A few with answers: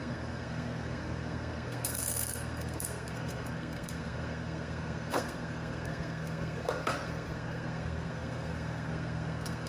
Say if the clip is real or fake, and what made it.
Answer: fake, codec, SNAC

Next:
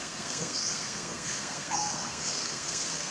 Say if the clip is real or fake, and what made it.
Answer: fake, codec, SNAC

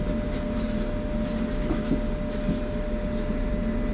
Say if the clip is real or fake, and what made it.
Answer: real